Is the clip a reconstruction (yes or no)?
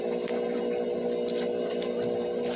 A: no